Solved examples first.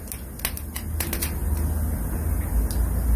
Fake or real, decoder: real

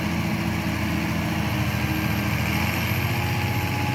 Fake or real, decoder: real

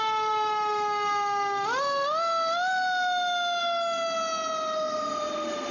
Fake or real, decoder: real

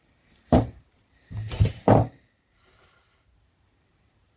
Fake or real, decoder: fake, vocoder, BigVGAN v2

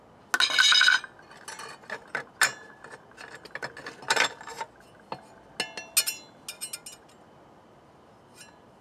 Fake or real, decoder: real